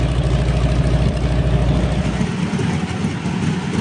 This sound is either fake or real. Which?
real